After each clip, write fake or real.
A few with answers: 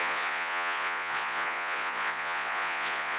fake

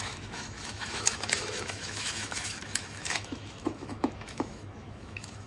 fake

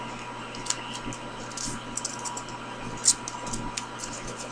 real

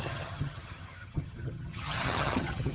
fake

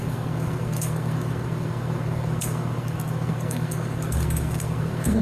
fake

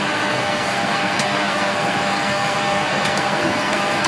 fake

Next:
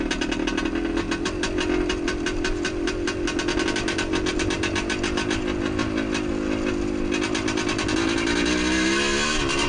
real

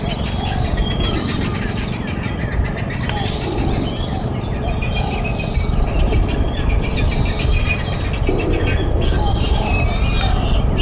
real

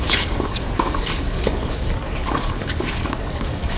fake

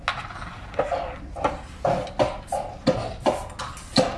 real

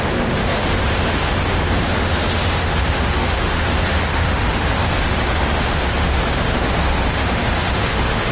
fake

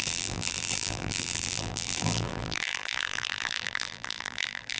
fake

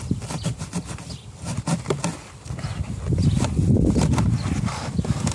real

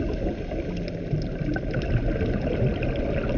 real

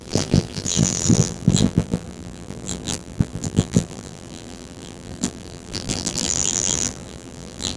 fake